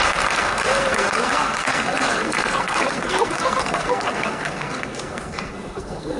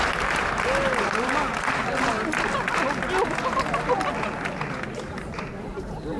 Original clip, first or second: second